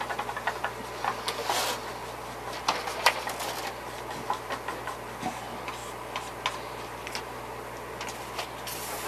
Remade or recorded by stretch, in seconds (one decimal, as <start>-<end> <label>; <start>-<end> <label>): 0.0-9.1 recorded